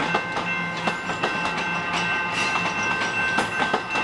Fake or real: real